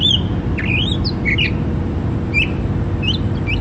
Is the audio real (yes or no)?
yes